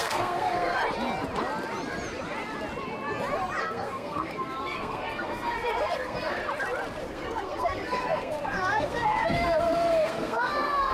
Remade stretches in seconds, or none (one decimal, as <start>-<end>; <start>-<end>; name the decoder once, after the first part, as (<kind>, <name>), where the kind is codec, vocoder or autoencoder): 0.0-0.8 (codec, SNAC); 3.6-6.4; 7.0-10.9